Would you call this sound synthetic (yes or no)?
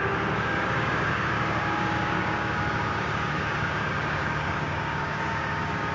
yes